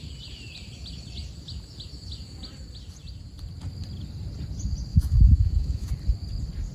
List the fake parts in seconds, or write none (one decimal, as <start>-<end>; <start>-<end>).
4.9-5.9